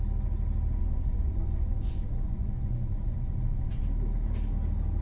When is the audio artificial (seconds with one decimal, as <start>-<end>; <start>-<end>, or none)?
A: 0.8-3.8